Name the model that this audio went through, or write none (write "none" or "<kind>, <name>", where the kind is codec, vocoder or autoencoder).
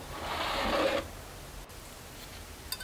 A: none